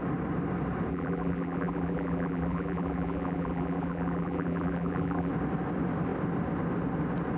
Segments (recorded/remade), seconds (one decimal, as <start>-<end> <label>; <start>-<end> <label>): 0.0-0.9 recorded; 0.9-5.3 remade; 5.3-7.4 recorded